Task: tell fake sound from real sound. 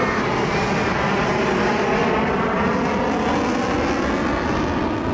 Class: real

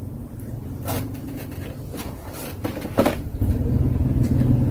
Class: fake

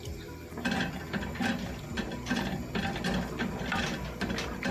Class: real